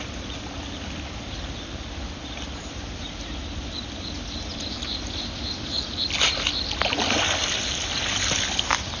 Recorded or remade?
recorded